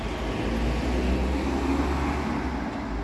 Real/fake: real